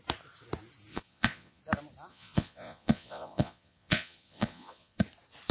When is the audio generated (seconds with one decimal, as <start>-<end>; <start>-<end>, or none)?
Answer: 0.9-1.6; 2.1-5.0